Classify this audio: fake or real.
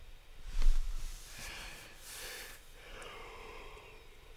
fake